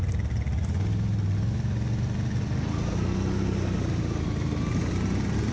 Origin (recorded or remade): recorded